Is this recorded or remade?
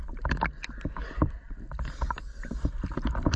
recorded